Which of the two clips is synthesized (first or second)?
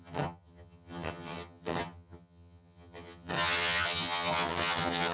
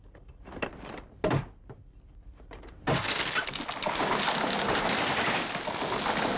first